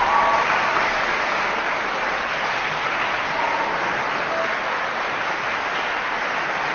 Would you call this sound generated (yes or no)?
no